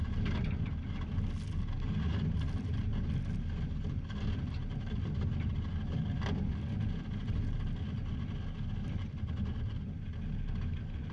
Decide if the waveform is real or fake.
real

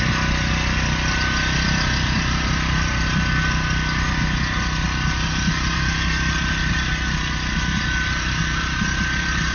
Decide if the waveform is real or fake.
real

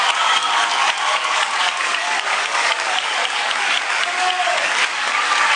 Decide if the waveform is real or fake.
fake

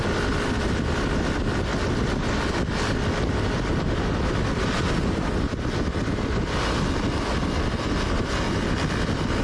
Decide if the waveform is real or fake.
real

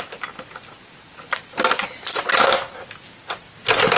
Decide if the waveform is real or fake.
real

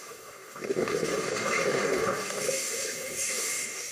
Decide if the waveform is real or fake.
fake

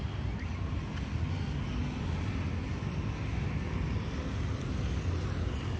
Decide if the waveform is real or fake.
real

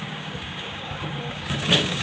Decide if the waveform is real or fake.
fake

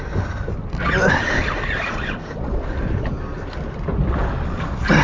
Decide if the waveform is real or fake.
real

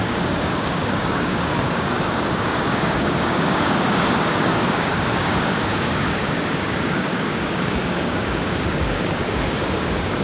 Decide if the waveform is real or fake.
fake